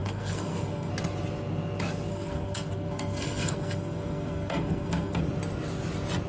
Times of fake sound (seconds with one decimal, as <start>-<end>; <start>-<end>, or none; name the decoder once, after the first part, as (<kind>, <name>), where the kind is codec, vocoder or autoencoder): 0.0-0.9 (codec, SNAC); 2.1-5.2